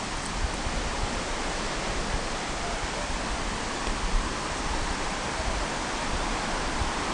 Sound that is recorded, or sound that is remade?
recorded